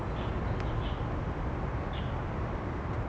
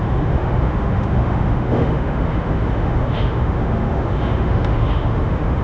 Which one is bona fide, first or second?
first